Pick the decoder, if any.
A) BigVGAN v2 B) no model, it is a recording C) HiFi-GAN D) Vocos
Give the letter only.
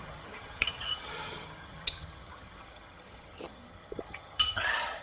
C